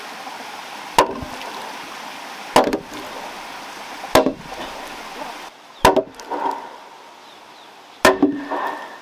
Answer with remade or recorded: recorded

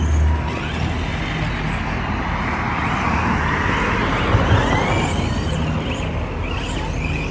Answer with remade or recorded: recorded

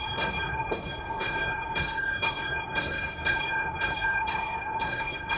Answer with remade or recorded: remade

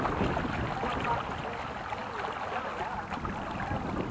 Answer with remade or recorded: recorded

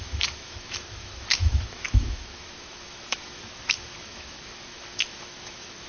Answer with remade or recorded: remade